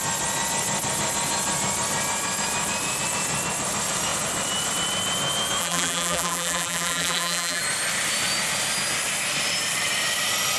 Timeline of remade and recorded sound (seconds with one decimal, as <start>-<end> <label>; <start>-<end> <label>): 0.0-5.6 recorded; 5.6-7.6 remade; 7.6-10.6 recorded